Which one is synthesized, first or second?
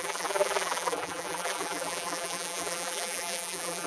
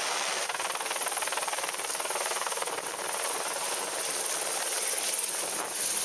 first